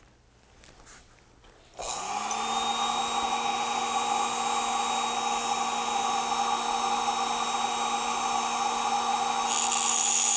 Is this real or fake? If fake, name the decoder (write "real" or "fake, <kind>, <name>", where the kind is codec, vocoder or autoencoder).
real